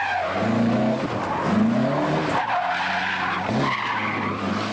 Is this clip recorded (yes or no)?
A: yes